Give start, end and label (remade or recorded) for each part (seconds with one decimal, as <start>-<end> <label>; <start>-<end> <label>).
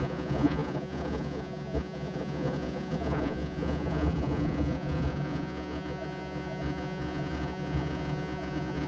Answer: 0.0-8.9 remade